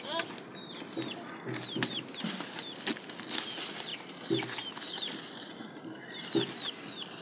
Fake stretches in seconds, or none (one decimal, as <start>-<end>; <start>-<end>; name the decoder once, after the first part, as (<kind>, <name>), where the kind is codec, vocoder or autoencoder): 3.9-7.2 (vocoder, BigVGAN v2)